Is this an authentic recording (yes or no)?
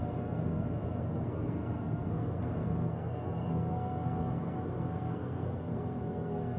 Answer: no